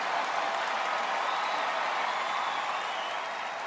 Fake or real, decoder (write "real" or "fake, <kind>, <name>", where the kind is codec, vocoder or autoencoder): real